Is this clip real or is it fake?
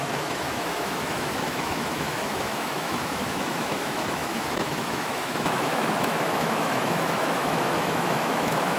fake